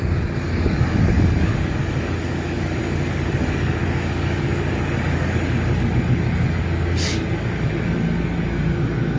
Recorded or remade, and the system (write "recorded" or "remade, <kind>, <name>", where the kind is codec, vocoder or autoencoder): remade, codec, DAC